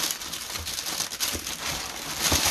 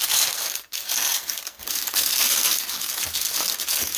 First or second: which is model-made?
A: second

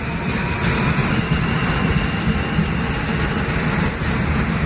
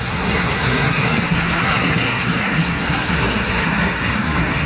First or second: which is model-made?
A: second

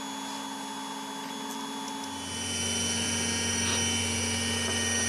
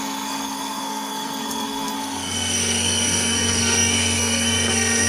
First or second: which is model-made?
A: second